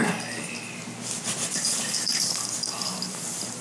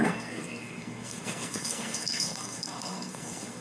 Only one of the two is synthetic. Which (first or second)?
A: second